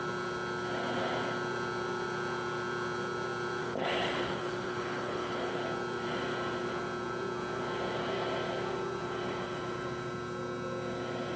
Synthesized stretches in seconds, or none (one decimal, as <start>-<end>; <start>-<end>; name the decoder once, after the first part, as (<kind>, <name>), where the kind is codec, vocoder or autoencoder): 3.6-5.6 (codec, HILCodec)